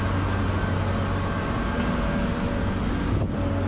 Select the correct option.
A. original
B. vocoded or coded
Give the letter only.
A